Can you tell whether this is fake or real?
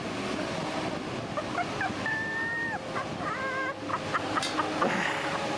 real